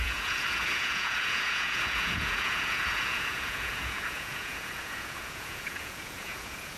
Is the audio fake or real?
fake